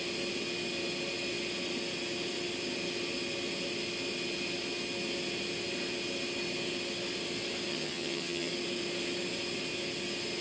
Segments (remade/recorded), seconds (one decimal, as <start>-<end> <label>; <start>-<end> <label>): 0.0-7.7 recorded; 7.7-8.5 remade; 8.5-10.4 recorded